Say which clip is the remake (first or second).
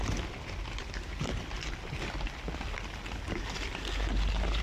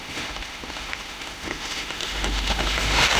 second